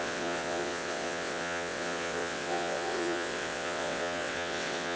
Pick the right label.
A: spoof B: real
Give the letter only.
A